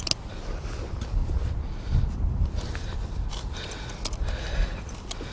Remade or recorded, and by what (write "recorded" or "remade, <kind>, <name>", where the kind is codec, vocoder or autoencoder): recorded